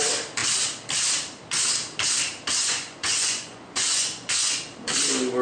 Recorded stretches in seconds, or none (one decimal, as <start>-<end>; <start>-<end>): 0.0-2.6; 4.6-5.4